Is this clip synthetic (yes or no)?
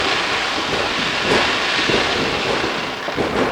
no